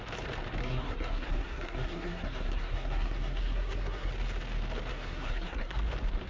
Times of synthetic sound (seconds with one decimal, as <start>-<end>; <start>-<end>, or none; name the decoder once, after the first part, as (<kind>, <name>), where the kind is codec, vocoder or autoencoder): 0.6-4.1 (codec, SNAC); 4.9-5.8